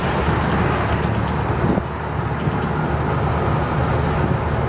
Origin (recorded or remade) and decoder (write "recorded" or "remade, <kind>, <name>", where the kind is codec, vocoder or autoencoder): recorded